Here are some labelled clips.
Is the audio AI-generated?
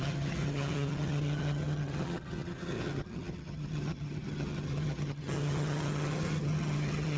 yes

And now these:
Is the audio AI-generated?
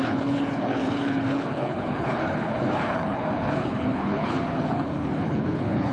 yes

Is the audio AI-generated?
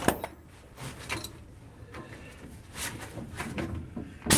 no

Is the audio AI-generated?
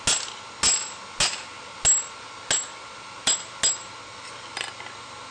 no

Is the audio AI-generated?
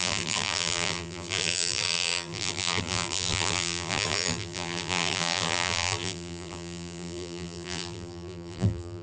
yes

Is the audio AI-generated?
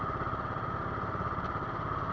no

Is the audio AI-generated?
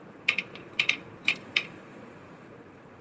yes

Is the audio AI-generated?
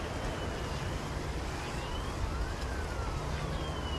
no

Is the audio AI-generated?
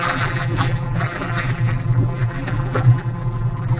yes